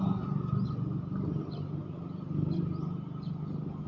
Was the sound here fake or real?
real